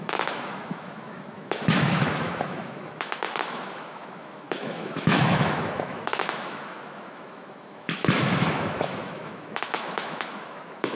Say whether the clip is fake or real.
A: fake